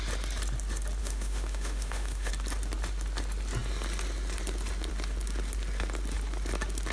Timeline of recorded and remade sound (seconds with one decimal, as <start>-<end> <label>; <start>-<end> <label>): 0.0-1.0 recorded; 1.0-2.3 remade; 2.3-6.9 recorded